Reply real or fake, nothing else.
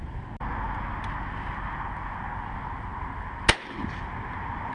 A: real